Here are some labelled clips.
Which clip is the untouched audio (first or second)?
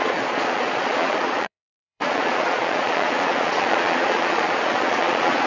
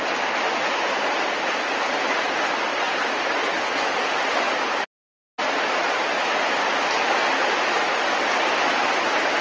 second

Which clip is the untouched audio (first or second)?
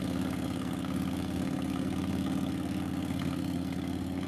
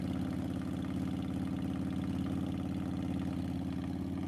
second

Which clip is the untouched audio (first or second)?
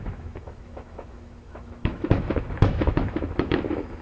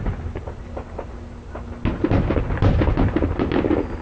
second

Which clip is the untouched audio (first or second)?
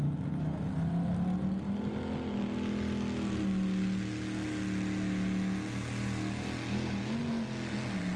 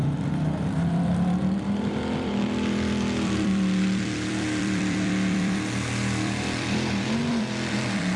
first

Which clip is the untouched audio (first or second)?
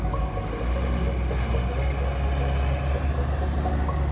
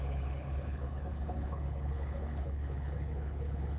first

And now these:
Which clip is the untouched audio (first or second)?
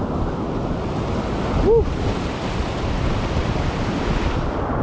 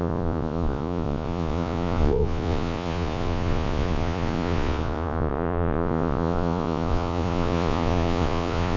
first